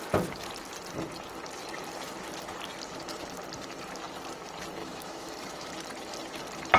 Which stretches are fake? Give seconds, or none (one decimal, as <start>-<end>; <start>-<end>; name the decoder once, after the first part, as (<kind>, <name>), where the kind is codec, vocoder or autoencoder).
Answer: 4.8-5.7 (autoencoder, DAC-VAE)